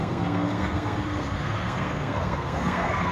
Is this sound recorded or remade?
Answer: remade